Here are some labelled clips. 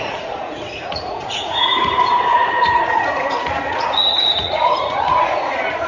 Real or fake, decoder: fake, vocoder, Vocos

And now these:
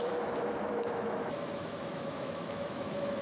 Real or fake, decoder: fake, autoencoder, DAC-VAE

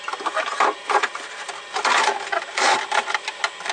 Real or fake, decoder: real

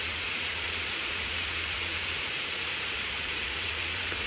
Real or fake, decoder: fake, vocoder, Vocos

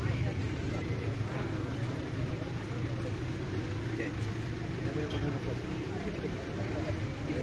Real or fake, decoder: real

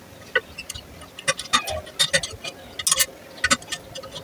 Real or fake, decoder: real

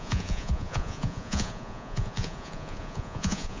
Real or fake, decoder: fake, vocoder, Vocos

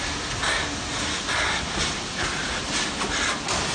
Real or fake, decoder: real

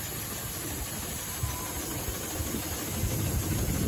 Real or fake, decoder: real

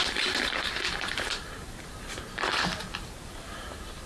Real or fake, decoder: fake, vocoder, BigVGAN v2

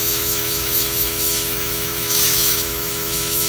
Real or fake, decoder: fake, autoencoder, DAC-VAE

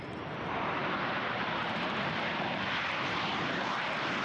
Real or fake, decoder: fake, vocoder, BigVGAN v2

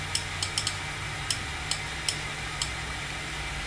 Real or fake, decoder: real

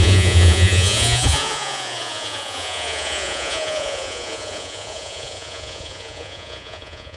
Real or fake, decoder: fake, vocoder, Vocos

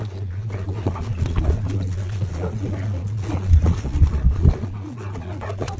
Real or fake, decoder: fake, vocoder, Vocos